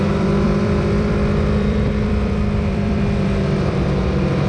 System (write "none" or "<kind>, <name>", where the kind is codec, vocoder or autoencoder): vocoder, BigVGAN v2